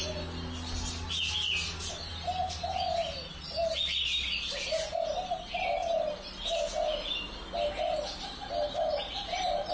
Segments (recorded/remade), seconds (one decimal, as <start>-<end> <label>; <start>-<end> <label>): 0.0-5.8 recorded; 5.8-6.6 remade; 6.6-8.4 recorded; 8.4-9.7 remade